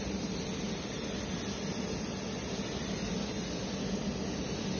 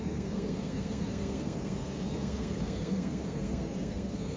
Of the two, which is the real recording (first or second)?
first